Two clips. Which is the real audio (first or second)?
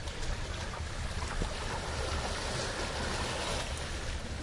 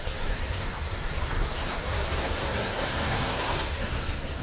first